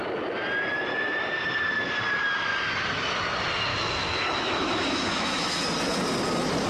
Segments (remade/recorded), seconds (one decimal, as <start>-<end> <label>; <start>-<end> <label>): 0.0-0.9 recorded; 0.9-1.4 remade; 1.4-3.7 recorded; 3.7-5.5 remade; 5.5-6.7 recorded